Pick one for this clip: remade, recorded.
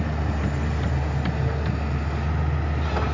recorded